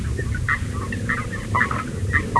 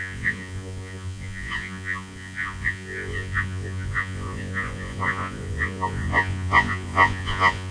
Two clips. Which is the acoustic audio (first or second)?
first